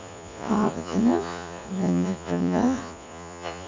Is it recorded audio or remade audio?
remade